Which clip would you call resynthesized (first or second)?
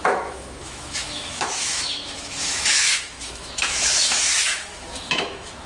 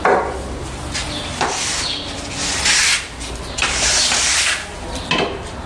first